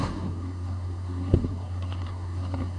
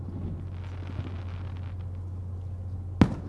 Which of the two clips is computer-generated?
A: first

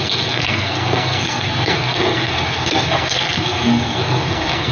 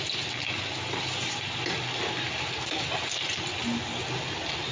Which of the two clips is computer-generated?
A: first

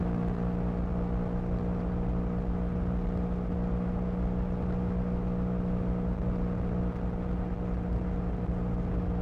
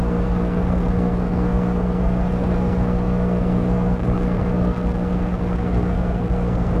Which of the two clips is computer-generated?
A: second